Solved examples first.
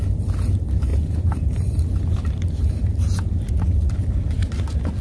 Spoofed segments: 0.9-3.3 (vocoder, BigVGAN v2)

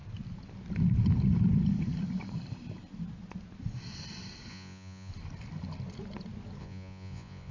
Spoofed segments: 4.5-5.1 (vocoder, Vocos); 6.6-7.5

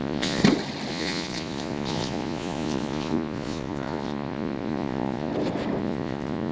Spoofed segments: 0.0-0.4 (vocoder, Vocos); 0.9-5.3; 5.8-6.5

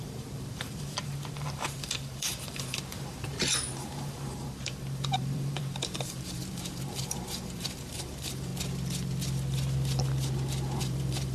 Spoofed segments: 0.0-8.5 (vocoder, BigVGAN v2); 10.8-11.3